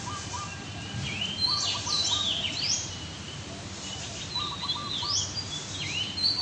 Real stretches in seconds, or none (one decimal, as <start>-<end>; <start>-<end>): 4.8-5.5